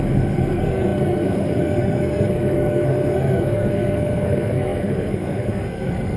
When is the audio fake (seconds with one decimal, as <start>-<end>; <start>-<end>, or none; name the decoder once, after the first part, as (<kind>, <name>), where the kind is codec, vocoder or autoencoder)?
0.0-6.2 (codec, SNAC)